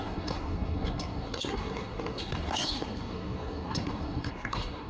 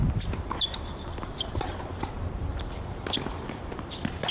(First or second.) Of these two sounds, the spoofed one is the first